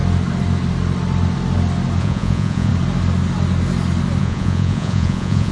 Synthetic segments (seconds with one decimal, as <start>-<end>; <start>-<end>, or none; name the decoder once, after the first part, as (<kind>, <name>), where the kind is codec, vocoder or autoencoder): 2.0-2.7 (vocoder, Vocos); 4.2-5.5